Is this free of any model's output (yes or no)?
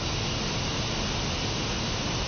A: yes